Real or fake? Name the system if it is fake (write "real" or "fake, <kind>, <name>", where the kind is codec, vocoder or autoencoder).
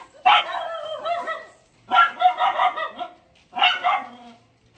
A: real